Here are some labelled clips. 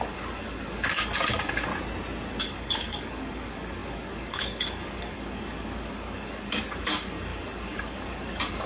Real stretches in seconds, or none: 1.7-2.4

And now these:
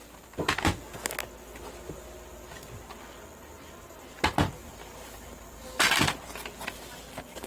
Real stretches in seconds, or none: 0.0-4.6; 6.0-7.5

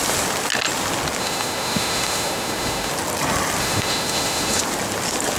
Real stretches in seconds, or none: 0.0-1.2; 2.9-3.6; 4.6-5.4

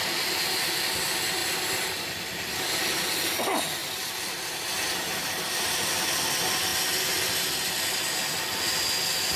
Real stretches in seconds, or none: 0.0-1.4; 2.2-3.8; 5.9-9.4